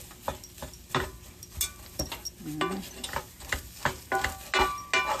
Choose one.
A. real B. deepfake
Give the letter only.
A